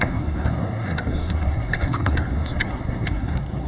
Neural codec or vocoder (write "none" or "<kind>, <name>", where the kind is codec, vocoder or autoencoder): codec, SNAC